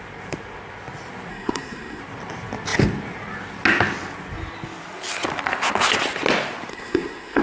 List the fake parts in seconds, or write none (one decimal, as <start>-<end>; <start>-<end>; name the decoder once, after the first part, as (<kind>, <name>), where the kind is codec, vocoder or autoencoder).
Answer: 1.3-2.0 (codec, SNAC); 6.7-7.4